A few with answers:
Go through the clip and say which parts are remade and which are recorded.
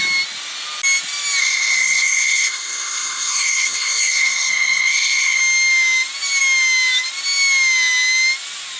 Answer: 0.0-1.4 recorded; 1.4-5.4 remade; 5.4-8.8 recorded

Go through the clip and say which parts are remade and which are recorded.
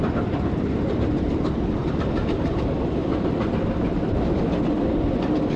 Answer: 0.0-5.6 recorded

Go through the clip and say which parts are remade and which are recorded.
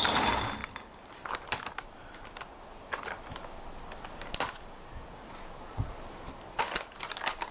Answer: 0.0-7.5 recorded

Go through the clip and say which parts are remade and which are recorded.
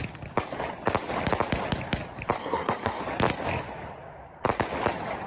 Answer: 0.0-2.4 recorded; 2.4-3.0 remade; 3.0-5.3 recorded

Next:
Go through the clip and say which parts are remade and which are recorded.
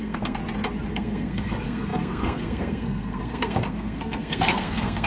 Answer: 0.0-0.4 remade; 0.4-0.9 recorded; 0.9-5.1 remade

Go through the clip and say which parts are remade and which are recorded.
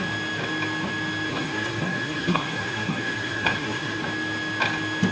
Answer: 0.0-1.3 recorded; 1.3-4.0 remade; 4.0-5.1 recorded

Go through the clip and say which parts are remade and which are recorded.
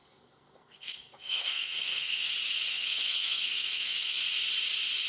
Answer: 0.0-2.3 remade; 2.3-2.7 recorded; 2.7-4.2 remade; 4.2-5.1 recorded